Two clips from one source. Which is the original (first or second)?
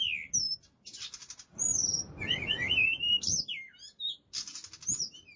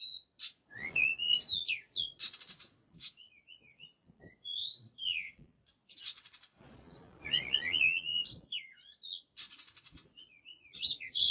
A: first